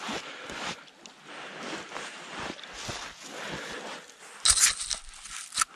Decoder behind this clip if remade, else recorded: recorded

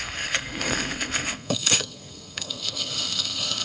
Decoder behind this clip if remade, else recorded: remade, codec, SNAC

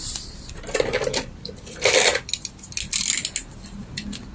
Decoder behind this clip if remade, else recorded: recorded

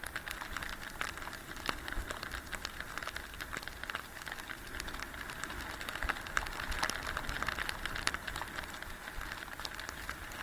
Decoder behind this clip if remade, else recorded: recorded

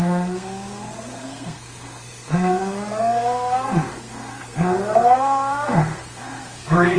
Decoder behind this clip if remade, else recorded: remade, codec, SNAC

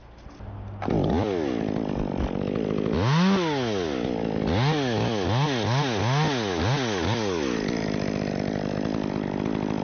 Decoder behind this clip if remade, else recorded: recorded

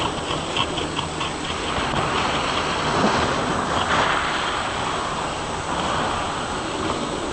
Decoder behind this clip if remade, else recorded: recorded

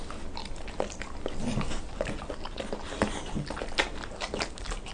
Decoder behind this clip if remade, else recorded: recorded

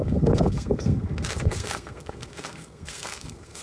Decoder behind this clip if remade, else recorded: remade, codec, SNAC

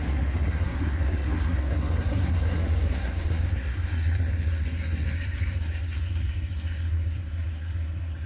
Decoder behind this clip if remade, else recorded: remade, codec, SNAC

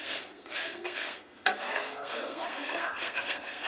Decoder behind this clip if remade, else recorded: remade, codec, SNAC